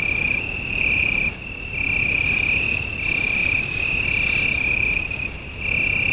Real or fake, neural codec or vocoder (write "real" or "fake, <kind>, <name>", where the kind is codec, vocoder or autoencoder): real